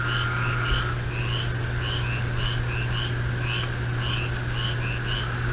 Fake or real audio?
real